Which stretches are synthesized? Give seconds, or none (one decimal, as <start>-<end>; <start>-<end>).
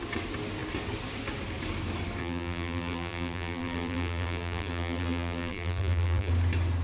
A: 2.2-6.3